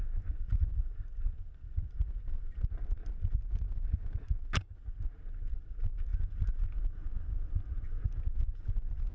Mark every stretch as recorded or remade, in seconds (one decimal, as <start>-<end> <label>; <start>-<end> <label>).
0.0-9.1 recorded